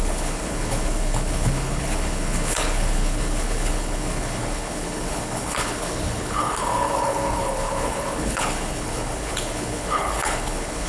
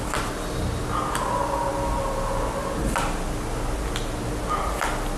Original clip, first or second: second